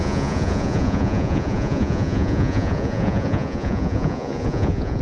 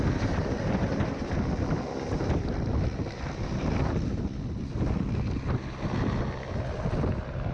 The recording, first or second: second